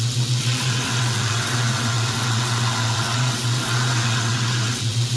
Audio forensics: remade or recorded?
remade